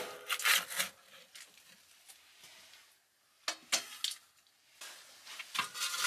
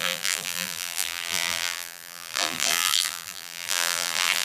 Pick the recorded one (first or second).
first